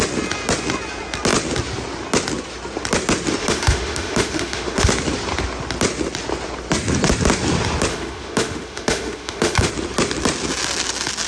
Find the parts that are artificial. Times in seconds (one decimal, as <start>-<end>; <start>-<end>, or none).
3.4-4.9; 7.9-9.7